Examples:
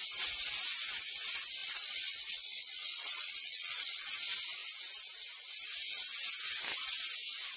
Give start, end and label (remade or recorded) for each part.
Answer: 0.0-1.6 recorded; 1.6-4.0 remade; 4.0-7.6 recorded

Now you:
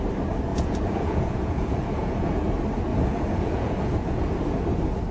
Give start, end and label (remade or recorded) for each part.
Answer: 0.0-0.5 recorded; 0.5-2.3 remade; 2.3-2.9 recorded; 2.9-4.4 remade; 4.4-5.1 recorded

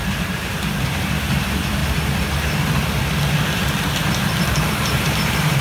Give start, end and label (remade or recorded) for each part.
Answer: 0.0-1.8 remade; 1.8-4.4 recorded; 4.4-5.6 remade

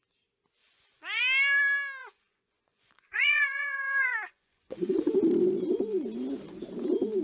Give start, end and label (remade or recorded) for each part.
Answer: 0.0-0.6 recorded; 0.6-1.2 remade; 1.2-2.0 recorded; 2.0-5.2 remade; 5.2-7.2 recorded

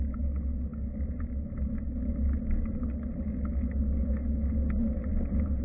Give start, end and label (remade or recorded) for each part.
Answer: 0.0-5.6 recorded

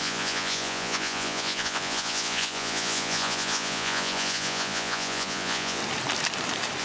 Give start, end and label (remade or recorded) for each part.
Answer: 0.0-5.8 remade; 5.8-6.8 recorded